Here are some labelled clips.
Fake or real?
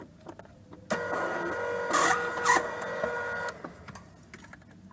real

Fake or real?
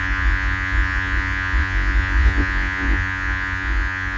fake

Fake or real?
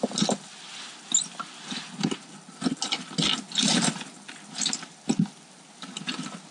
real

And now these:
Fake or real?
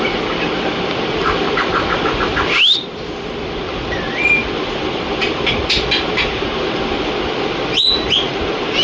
real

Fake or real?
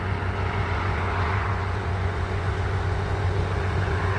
fake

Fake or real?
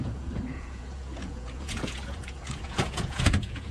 fake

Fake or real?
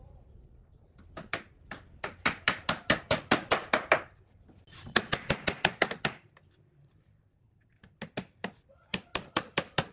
real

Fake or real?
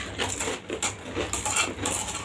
real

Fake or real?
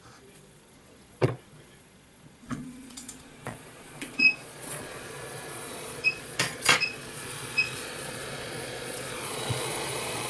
fake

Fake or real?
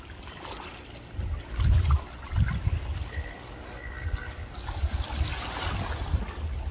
real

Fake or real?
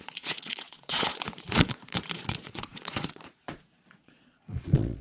fake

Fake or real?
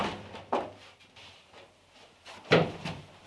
real